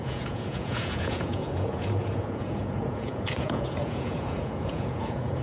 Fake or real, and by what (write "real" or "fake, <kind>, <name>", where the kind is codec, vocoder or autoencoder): fake, vocoder, Vocos